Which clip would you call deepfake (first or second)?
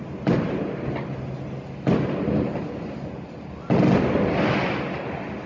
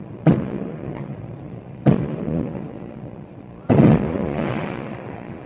second